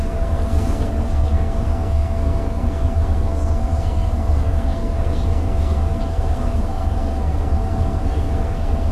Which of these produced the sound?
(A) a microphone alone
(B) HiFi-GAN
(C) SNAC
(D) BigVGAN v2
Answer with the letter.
C